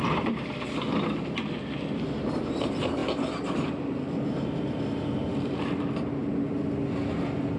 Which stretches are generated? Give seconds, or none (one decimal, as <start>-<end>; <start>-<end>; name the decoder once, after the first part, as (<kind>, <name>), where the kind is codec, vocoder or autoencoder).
none